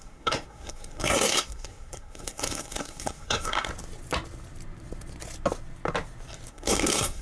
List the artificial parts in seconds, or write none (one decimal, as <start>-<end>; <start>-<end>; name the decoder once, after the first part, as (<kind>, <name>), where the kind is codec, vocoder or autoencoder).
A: 0.0-3.7 (codec, SNAC); 6.5-7.2